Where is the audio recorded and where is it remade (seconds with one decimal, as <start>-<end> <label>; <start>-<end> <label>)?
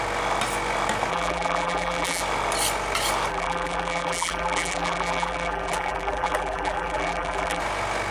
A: 0.0-1.1 recorded; 1.1-2.2 remade; 2.2-3.3 recorded; 3.3-7.6 remade; 7.6-8.1 recorded